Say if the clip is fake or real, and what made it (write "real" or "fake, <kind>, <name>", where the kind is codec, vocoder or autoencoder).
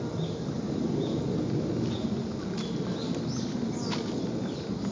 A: real